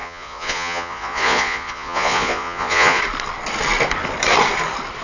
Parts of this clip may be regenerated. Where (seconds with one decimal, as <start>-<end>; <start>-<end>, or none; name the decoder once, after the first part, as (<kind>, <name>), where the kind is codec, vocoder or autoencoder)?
0.0-3.0 (vocoder, Vocos)